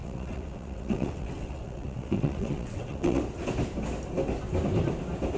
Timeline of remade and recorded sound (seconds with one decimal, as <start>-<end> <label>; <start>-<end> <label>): 0.0-3.2 remade; 3.2-5.4 recorded